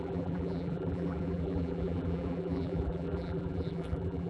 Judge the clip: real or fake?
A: fake